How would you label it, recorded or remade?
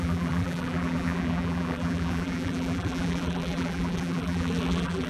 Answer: remade